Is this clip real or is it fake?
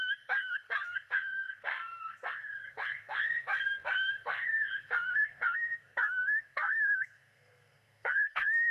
fake